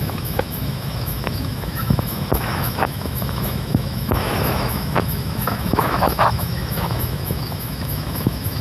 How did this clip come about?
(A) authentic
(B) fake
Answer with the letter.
B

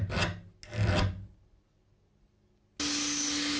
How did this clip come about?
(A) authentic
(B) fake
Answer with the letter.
A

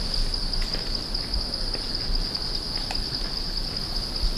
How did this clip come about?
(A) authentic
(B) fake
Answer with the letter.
A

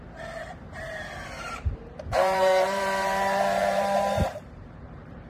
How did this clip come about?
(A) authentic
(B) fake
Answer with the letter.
B